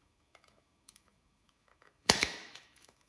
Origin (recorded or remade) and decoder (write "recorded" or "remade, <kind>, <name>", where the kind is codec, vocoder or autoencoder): remade, autoencoder, DAC-VAE